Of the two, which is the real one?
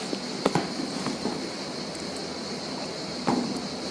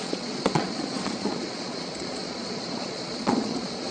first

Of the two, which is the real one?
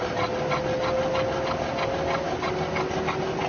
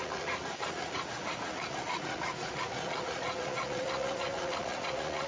first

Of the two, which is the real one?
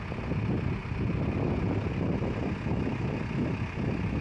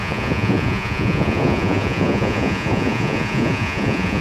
first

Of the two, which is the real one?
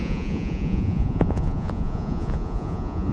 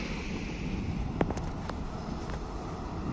second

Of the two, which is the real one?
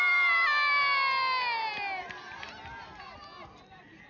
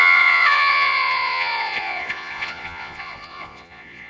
first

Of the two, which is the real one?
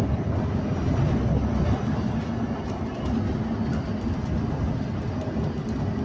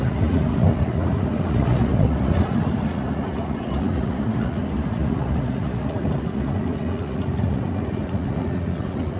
first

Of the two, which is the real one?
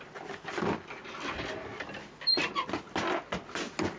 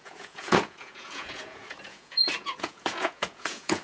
first